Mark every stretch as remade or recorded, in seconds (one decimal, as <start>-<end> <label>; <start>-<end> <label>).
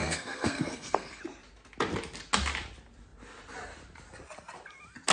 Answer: 0.0-1.2 remade; 1.2-5.1 recorded